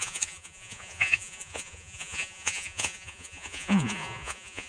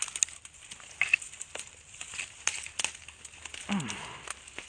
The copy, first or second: first